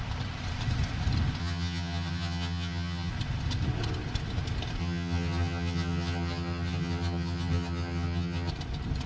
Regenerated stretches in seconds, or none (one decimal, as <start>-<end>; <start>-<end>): 1.4-3.1; 4.8-8.5